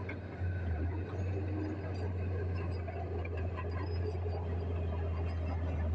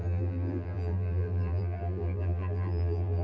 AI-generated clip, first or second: second